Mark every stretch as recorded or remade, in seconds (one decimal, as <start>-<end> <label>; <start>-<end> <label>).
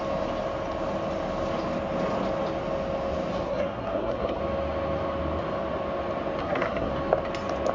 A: 0.0-3.3 recorded; 3.3-4.4 remade; 4.4-6.4 recorded; 6.4-6.9 remade; 6.9-7.7 recorded